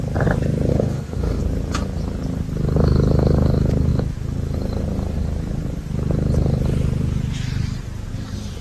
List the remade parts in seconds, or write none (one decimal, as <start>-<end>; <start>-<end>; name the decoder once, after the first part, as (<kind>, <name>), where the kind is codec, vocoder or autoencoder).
0.7-1.4 (autoencoder, DAC-VAE)